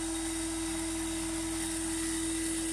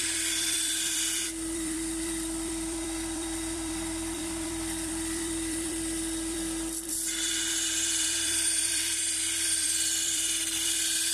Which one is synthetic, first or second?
second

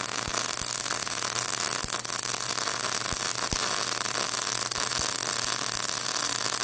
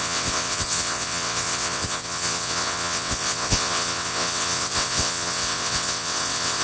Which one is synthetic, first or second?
second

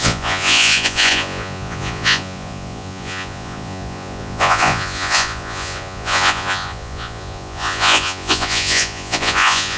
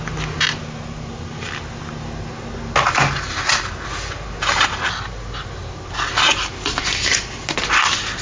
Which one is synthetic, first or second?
first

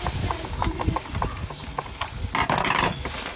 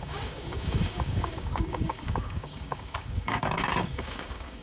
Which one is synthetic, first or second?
second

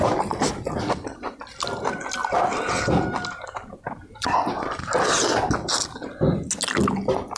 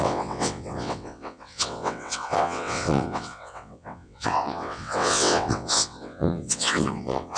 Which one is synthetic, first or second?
second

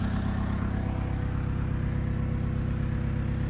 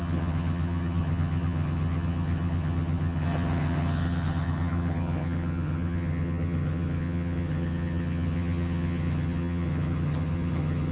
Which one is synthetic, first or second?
second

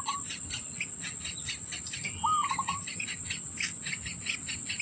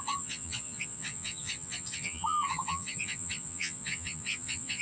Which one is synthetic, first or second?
second